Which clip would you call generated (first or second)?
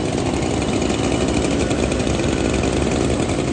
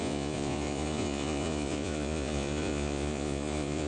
second